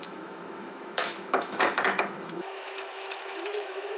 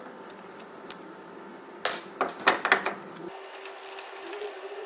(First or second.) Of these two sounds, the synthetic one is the first